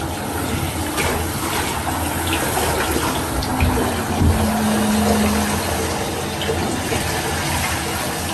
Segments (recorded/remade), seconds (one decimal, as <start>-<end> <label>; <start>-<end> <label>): 0.0-8.3 recorded